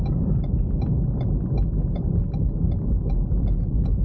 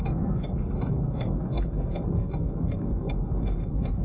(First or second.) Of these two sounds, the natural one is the first